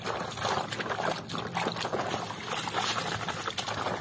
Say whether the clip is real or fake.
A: real